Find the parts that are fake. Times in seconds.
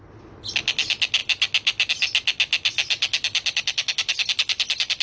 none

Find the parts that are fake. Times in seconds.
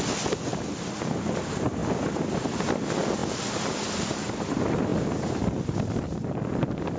none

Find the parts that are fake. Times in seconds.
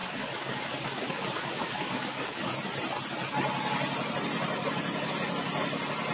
0.0-2.5 (codec, DAC)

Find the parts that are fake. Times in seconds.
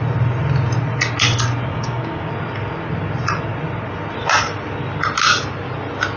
1.7-2.3 (codec, DAC)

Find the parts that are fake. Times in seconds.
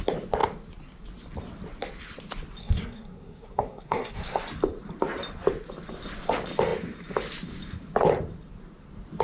2.6-4.4 (codec, SNAC)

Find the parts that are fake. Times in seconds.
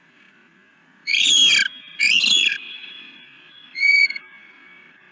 0.0-1.4 (vocoder, Vocos); 2.0-5.1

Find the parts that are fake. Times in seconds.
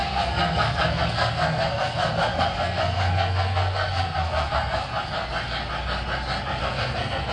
0.0-4.9 (codec, SNAC); 6.6-7.3